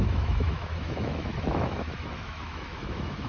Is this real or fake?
fake